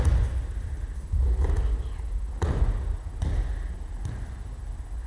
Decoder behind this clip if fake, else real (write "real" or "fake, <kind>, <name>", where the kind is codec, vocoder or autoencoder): real